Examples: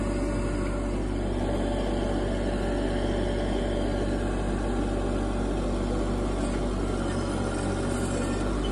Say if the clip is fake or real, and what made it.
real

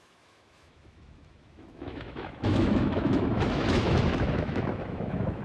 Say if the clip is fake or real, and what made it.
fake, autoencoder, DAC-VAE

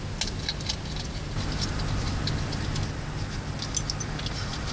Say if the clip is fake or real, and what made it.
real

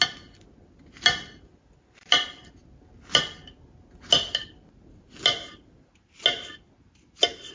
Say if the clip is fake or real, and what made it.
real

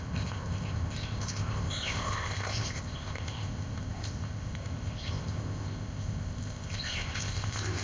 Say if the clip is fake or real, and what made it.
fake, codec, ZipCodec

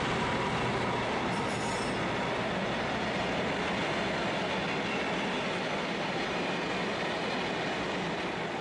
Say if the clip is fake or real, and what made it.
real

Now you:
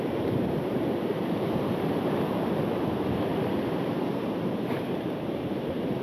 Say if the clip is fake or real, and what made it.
fake, vocoder, BigVGAN v2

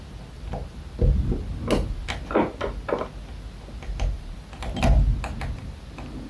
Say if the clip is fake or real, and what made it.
real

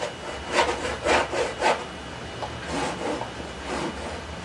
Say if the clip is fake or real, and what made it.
real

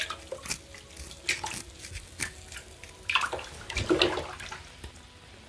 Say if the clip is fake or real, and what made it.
real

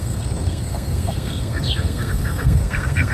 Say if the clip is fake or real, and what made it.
fake, codec, SNAC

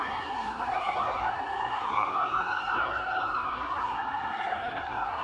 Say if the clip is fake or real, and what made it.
fake, codec, SNAC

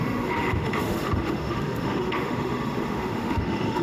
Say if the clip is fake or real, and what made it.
fake, autoencoder, DAC-VAE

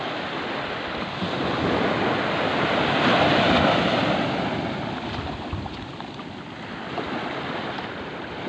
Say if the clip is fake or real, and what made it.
real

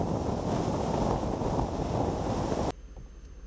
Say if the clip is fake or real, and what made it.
real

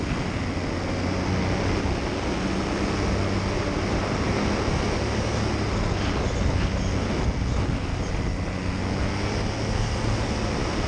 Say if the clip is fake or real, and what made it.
real